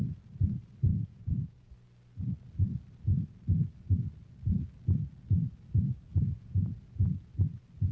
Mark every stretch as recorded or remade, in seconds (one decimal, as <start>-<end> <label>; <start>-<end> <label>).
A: 0.0-0.9 recorded; 0.9-1.7 remade; 1.7-6.1 recorded; 6.1-6.8 remade; 6.8-7.9 recorded